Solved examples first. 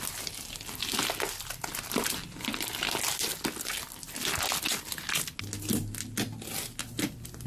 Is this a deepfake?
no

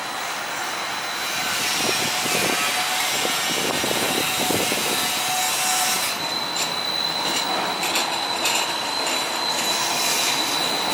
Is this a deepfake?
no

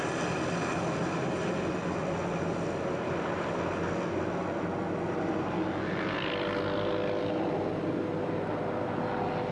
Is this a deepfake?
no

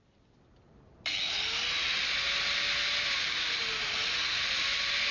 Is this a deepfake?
no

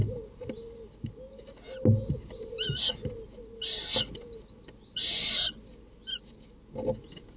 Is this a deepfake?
no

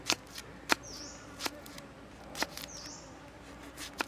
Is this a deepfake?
no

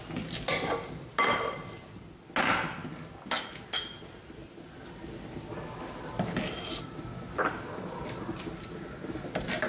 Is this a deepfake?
no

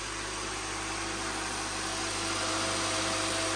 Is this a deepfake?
no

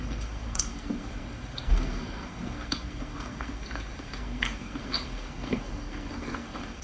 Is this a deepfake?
yes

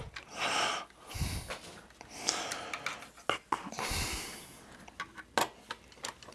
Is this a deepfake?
no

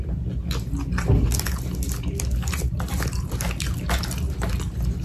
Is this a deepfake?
no